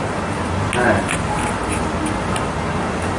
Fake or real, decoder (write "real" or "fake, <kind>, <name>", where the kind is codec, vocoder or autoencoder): real